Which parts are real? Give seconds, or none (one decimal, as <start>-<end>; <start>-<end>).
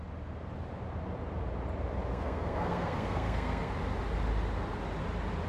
0.0-2.1; 3.7-5.5